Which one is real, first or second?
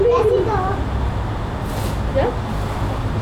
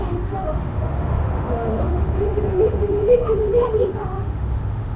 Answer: first